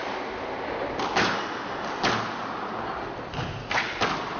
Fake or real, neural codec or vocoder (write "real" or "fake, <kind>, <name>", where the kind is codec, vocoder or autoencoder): real